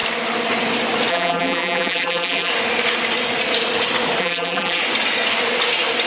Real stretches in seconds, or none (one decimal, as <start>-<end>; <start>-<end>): 0.0-1.1; 2.5-4.2; 4.8-6.1